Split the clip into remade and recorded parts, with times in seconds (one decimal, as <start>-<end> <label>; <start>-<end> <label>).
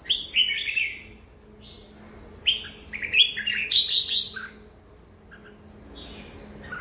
0.0-3.5 recorded; 3.5-4.4 remade; 4.4-6.8 recorded